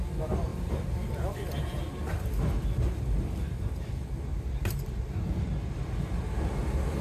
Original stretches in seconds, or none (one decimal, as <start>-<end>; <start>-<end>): 0.0-4.3; 5.4-7.0